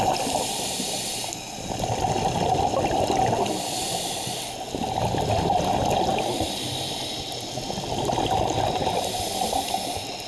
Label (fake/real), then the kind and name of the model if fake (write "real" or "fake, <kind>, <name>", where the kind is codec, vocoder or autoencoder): real